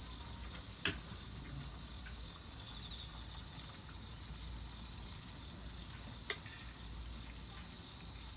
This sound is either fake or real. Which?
real